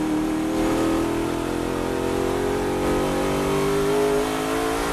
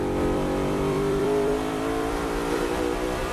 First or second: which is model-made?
second